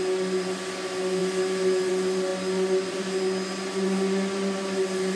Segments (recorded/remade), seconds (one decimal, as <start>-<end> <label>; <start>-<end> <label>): 0.0-5.2 recorded